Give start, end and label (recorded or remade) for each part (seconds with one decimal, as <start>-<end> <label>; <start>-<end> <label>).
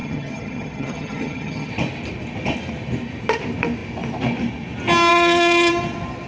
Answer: 0.0-1.7 remade; 1.7-5.1 recorded; 5.1-5.7 remade; 5.7-6.3 recorded